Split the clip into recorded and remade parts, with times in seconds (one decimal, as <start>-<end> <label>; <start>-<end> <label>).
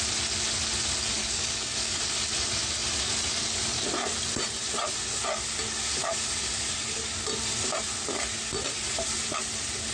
0.0-1.2 recorded; 1.2-2.0 remade; 2.0-9.9 recorded